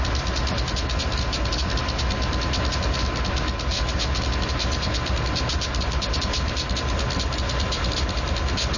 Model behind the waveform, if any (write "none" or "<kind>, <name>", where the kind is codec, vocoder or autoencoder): none